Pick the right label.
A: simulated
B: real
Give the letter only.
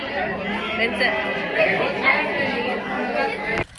B